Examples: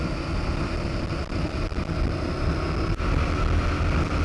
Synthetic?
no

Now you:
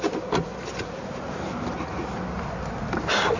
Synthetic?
no